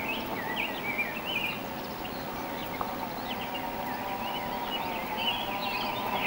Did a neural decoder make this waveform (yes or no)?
no